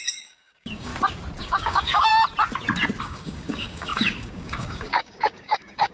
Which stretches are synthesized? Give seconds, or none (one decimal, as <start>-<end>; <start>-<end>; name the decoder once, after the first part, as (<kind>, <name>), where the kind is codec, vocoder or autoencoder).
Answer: 0.0-0.9 (codec, DAC); 1.4-2.1; 3.0-5.9